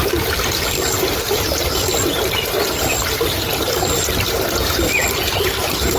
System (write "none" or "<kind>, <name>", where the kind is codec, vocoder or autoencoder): none